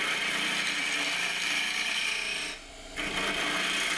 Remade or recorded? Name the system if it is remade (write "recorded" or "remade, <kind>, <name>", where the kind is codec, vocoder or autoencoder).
remade, vocoder, BigVGAN v2